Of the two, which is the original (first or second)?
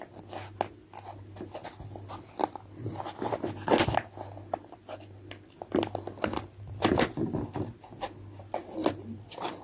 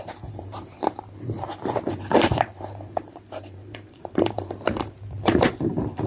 first